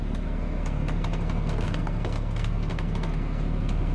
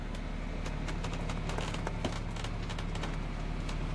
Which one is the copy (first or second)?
first